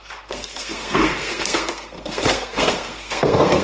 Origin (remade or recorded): remade